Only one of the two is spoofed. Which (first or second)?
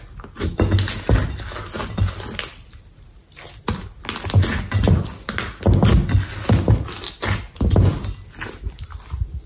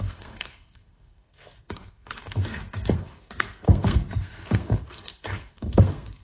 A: second